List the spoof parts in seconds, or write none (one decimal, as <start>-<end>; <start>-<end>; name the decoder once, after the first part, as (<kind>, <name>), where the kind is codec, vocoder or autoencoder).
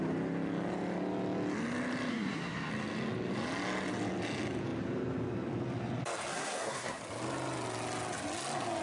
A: 2.1-2.7 (codec, SNAC); 6.3-7.0